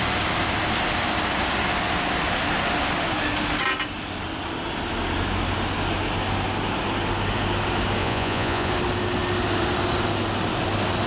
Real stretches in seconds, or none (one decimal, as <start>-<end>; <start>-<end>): 0.0-8.0; 8.7-11.1